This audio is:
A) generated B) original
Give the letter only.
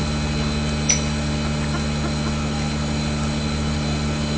B